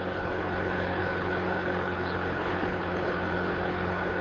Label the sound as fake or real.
fake